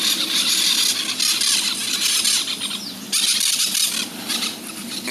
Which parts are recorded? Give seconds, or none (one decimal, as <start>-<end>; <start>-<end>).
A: 0.0-5.1